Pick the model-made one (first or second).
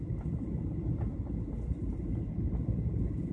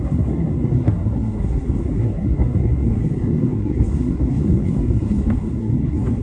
second